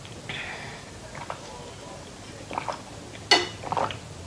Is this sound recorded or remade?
recorded